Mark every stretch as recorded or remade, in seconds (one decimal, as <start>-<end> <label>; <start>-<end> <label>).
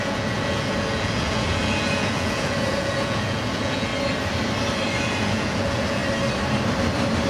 0.0-3.9 remade; 3.9-5.0 recorded; 5.0-6.0 remade; 6.0-7.3 recorded